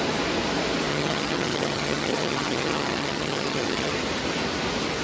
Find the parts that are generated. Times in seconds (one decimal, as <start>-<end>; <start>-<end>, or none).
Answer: 0.9-3.9